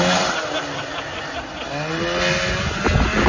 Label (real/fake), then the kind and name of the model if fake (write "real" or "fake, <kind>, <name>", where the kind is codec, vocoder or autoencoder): real